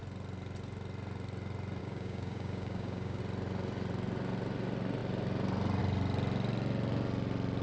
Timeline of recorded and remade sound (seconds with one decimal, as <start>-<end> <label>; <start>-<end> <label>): 0.0-1.8 recorded; 1.8-3.2 remade; 3.2-7.6 recorded